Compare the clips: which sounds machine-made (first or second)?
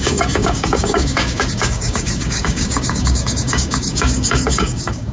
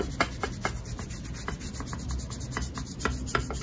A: first